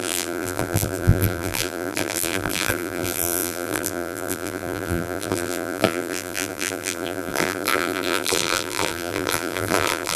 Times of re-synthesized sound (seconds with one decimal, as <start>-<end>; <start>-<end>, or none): 0.0-10.2

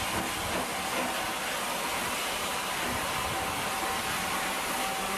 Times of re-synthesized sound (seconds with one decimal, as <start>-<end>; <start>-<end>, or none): none

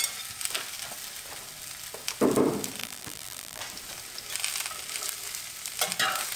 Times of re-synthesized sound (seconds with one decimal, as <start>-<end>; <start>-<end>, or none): 2.8-3.6

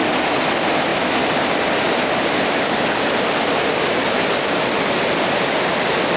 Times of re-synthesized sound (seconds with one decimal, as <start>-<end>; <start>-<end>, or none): none

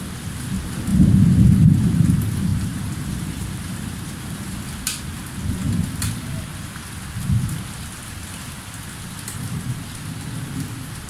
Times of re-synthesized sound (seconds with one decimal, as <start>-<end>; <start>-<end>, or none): 2.5-4.1

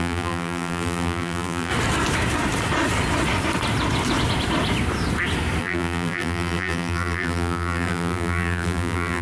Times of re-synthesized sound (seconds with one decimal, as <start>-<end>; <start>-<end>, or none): 0.0-1.7; 5.6-9.2

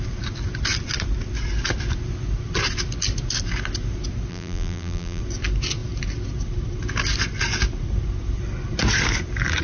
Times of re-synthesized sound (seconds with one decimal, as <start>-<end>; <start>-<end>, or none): 4.3-5.2

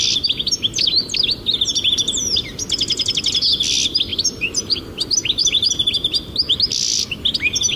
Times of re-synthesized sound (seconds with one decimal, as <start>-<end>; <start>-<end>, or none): 4.1-4.8